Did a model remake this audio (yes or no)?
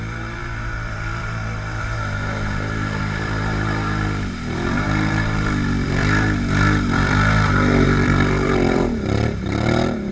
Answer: yes